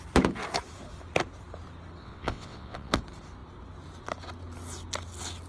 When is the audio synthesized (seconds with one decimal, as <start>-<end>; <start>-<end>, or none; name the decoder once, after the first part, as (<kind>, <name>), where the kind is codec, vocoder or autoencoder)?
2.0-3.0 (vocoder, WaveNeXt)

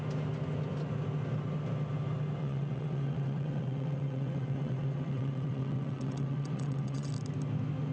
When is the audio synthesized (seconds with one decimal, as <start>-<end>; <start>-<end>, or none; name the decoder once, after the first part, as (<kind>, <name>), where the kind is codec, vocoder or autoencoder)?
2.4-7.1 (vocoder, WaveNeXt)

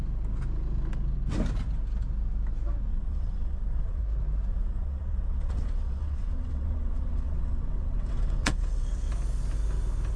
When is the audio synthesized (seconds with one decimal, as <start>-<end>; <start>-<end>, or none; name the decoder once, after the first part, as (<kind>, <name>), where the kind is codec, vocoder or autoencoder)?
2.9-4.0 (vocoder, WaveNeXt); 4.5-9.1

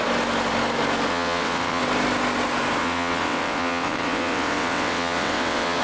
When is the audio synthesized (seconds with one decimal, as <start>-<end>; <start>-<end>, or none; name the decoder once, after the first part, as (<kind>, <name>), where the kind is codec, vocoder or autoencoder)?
1.1-1.8 (vocoder, WaveNeXt); 2.8-5.8

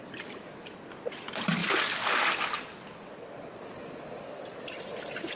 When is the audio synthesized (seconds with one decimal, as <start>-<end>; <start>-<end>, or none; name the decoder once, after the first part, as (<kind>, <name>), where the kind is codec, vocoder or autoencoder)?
none

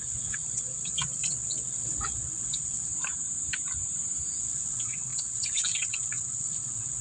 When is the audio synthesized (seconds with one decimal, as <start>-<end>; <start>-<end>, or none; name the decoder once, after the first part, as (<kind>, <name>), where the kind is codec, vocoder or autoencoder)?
0.0-2.9 (vocoder, WaveNeXt); 4.4-7.0